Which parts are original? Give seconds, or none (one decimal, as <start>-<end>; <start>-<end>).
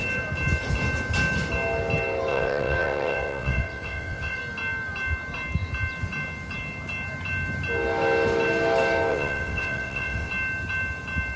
0.0-2.3; 4.4-9.1; 10.3-11.4